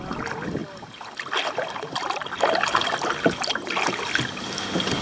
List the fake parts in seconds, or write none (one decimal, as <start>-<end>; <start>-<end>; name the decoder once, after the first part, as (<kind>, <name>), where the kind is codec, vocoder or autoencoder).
none